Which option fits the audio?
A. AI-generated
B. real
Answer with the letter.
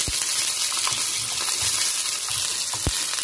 B